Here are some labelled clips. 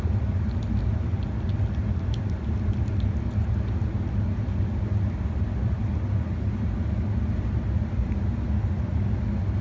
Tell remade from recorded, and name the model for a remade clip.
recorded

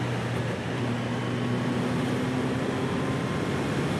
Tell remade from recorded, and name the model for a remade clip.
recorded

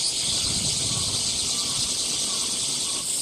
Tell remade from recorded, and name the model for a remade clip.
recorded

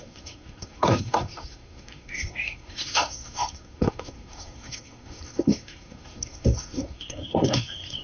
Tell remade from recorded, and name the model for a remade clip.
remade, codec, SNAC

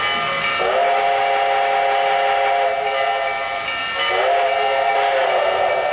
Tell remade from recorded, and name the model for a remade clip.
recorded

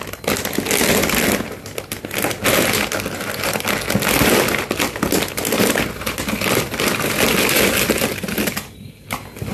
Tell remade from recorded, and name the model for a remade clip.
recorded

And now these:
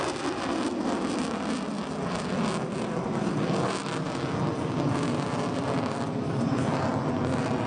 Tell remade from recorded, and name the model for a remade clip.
recorded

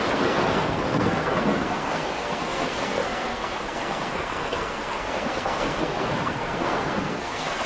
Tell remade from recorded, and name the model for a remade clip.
remade, codec, SNAC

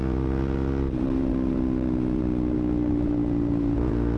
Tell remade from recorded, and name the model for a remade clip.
recorded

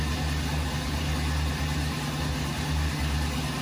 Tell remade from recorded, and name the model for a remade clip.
recorded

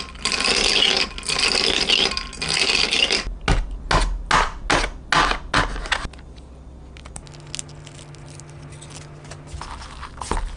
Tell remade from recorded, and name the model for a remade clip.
recorded